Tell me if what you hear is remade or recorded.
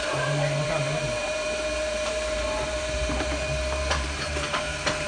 remade